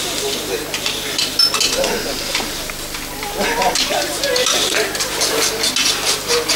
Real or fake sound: real